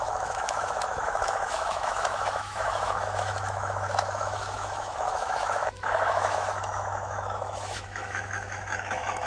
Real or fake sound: fake